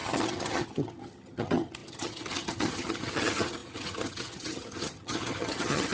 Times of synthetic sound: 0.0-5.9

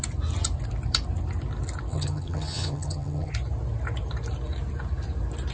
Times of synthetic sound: 1.9-3.3

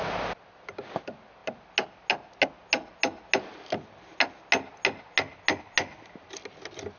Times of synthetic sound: none

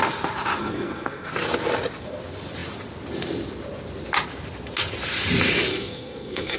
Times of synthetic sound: 0.6-1.3; 5.7-6.6

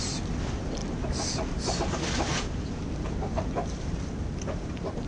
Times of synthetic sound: none